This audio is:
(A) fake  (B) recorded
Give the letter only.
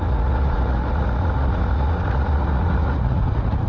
A